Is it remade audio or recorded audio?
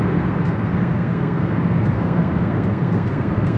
remade